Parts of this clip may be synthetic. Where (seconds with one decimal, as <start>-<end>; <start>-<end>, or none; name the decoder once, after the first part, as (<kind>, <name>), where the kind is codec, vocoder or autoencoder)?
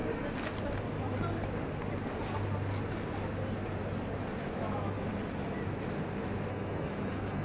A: 4.4-5.1 (autoencoder, DAC-VAE); 6.5-7.4